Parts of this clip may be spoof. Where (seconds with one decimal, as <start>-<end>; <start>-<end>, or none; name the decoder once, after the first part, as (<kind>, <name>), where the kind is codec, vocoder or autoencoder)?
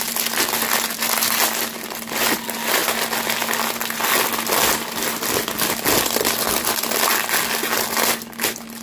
none